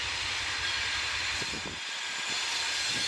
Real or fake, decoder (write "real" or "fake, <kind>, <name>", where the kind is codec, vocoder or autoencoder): real